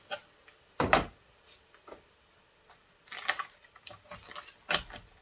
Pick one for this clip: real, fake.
real